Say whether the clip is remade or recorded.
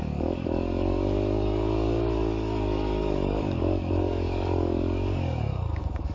remade